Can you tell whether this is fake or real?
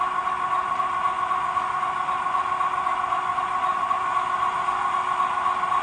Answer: real